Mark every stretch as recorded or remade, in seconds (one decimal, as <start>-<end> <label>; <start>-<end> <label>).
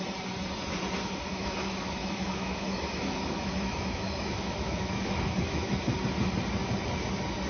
0.0-1.3 recorded; 1.3-5.8 remade; 5.8-7.5 recorded